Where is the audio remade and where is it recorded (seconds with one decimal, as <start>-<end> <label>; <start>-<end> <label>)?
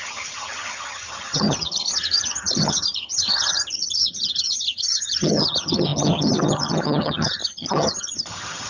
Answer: 0.0-8.7 remade